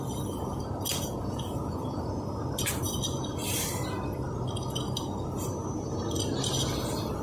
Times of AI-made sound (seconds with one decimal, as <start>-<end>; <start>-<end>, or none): 0.9-2.0